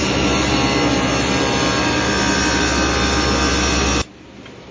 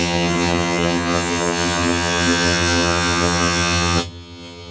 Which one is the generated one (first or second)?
second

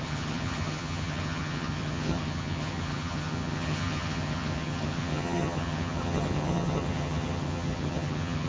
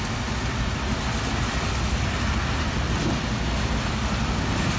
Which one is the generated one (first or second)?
first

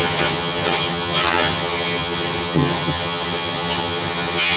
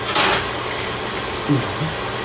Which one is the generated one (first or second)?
first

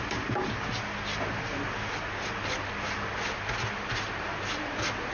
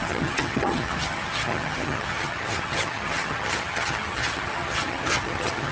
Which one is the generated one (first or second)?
second